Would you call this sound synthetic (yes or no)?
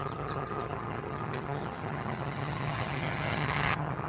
yes